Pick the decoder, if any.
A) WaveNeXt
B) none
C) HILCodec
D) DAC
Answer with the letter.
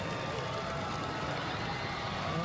B